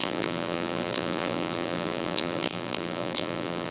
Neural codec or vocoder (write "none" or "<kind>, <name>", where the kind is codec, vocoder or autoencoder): vocoder, BigVGAN v2